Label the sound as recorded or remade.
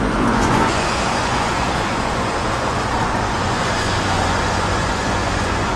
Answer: remade